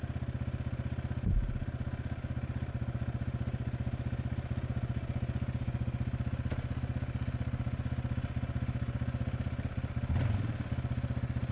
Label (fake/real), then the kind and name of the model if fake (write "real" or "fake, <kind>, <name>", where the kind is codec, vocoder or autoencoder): real